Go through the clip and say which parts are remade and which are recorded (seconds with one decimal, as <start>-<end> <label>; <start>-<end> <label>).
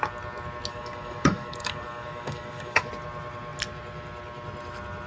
0.0-0.7 recorded; 0.7-2.9 remade; 2.9-5.1 recorded